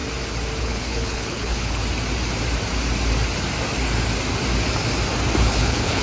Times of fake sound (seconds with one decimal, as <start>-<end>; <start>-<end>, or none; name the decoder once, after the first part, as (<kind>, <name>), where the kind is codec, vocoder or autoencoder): 0.6-1.8 (codec, HILCodec); 5.4-6.0